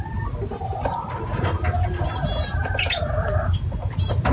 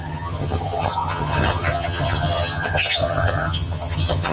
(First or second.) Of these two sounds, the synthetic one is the second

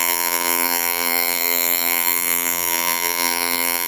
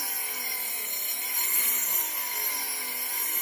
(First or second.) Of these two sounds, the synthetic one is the first